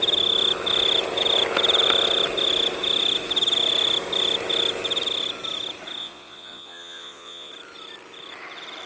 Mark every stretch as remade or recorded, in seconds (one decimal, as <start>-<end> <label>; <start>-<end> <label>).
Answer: 0.0-6.0 recorded; 6.0-7.5 remade; 7.5-8.9 recorded